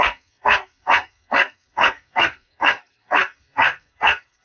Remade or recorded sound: remade